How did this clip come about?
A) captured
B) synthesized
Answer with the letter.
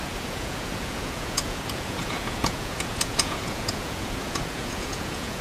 B